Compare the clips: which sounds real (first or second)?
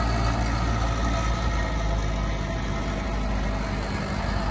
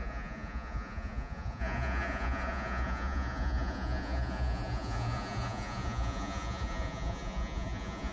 first